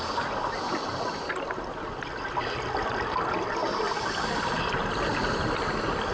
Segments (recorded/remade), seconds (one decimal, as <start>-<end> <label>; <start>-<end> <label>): 0.0-6.1 recorded